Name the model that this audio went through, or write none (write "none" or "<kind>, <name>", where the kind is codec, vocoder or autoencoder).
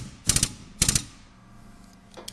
none